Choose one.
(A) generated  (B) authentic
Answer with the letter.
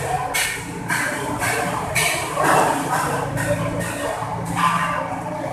A